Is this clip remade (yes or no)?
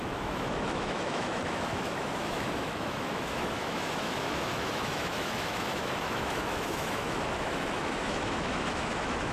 yes